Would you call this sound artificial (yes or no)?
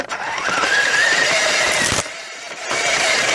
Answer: yes